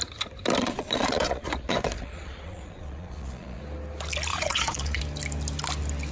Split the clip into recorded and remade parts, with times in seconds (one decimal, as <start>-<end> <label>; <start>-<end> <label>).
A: 0.0-0.6 recorded; 0.6-3.6 remade; 3.6-4.3 recorded; 4.3-5.0 remade; 5.0-6.1 recorded

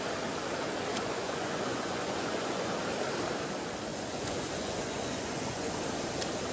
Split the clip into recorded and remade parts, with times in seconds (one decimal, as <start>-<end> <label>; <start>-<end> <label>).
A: 0.0-0.9 recorded; 0.9-2.7 remade; 2.7-3.9 recorded; 3.9-5.8 remade; 5.8-6.5 recorded

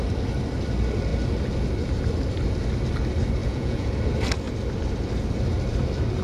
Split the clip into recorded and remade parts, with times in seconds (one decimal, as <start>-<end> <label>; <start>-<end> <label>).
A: 0.0-3.4 recorded; 3.4-3.9 remade; 3.9-6.2 recorded

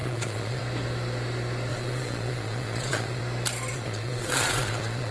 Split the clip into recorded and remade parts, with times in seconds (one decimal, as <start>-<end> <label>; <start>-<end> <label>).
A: 0.0-0.6 remade; 0.6-1.7 recorded; 1.7-3.2 remade; 3.2-3.7 recorded; 3.7-5.1 remade

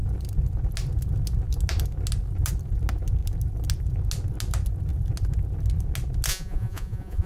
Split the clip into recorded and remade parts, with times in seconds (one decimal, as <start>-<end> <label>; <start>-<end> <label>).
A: 0.0-6.3 recorded; 6.3-7.3 remade

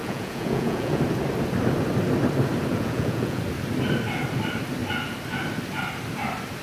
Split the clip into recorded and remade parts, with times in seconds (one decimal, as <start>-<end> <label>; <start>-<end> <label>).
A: 0.0-1.0 remade; 1.0-2.7 recorded; 2.7-3.4 remade; 3.4-6.6 recorded

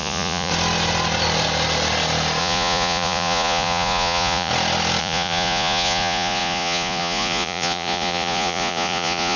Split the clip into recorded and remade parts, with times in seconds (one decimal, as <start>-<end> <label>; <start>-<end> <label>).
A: 0.0-0.5 remade; 0.5-2.4 recorded; 2.4-4.5 remade; 4.5-5.0 recorded; 5.0-9.4 remade

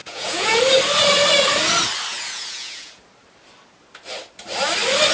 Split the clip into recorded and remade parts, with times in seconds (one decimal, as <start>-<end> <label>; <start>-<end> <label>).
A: 0.0-0.6 remade; 0.6-2.1 recorded; 2.1-3.0 remade; 3.0-5.1 recorded